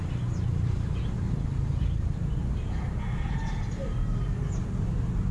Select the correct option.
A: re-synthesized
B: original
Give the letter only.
B